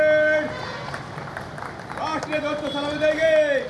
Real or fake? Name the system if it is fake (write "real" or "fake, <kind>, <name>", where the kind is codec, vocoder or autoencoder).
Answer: real